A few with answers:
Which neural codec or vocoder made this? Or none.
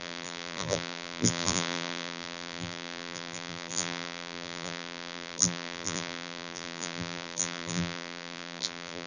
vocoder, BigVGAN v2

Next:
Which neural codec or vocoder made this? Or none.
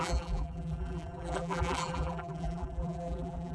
vocoder, BigVGAN v2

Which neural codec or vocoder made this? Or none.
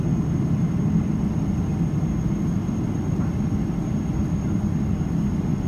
none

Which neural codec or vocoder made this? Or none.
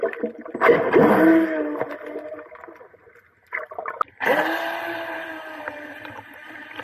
none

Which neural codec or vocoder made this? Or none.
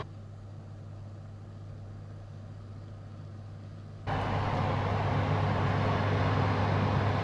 none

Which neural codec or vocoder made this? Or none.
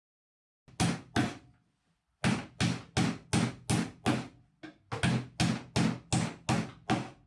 none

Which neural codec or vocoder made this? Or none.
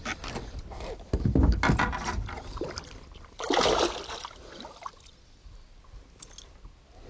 none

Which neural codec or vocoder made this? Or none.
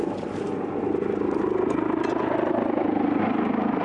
none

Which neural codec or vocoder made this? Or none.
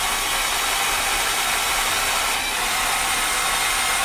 none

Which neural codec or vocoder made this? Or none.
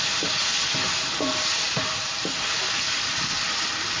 none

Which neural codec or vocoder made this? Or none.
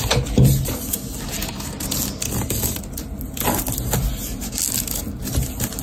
none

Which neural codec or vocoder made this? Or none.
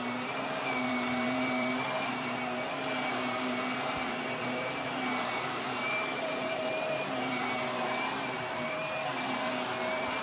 vocoder, BigVGAN v2